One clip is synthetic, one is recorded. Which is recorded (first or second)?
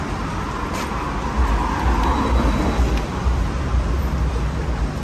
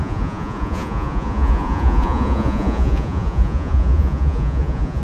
first